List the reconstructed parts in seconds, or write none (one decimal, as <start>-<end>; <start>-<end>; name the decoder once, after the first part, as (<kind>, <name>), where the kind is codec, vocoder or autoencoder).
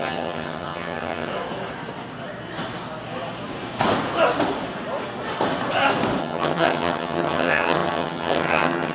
0.0-1.3 (vocoder, HiFi-GAN); 6.2-8.9